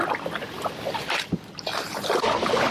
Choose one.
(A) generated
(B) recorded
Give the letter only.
B